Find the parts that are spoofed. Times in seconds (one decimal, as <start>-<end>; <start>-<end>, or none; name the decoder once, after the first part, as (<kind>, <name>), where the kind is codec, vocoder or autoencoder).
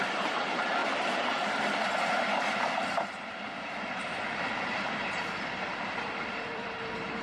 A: 0.0-0.8 (vocoder, BigVGAN v2); 2.4-7.2